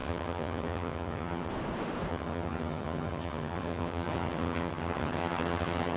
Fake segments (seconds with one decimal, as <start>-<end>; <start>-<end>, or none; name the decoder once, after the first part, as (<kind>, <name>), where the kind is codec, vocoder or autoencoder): 0.0-1.5 (vocoder, HiFi-GAN); 2.1-6.0